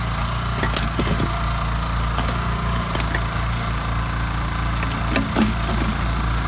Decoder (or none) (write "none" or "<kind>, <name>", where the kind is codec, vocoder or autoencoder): none